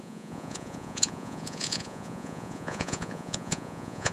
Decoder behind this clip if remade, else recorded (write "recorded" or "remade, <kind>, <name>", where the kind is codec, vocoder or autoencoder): remade, vocoder, Vocos